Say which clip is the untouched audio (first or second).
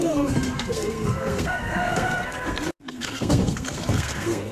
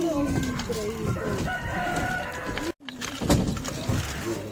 second